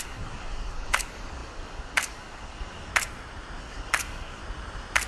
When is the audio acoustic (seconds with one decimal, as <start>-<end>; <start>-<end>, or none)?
2.9-3.6; 4.4-5.1